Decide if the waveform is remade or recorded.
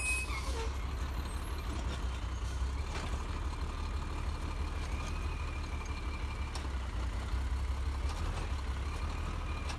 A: recorded